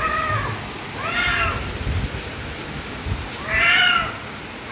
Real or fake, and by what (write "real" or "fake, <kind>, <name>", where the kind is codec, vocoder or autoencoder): real